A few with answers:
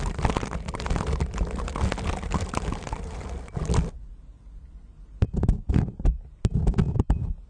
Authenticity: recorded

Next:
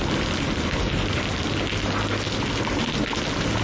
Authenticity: recorded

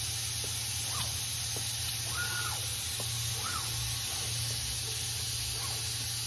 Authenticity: recorded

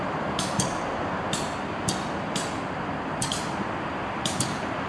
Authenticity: remade